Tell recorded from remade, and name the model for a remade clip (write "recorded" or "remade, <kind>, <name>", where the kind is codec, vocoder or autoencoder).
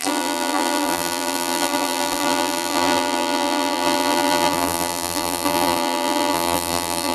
remade, vocoder, BigVGAN v2